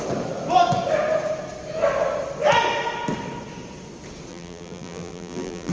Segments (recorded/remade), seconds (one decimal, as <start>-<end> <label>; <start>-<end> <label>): 0.0-4.3 recorded; 4.3-5.7 remade